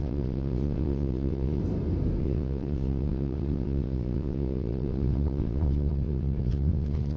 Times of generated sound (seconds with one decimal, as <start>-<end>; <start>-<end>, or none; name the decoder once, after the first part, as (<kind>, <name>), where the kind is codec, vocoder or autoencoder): 0.0-1.6 (vocoder, WaveNeXt); 2.2-7.2